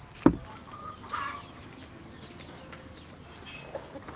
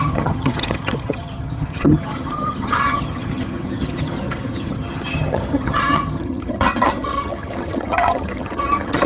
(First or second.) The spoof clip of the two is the second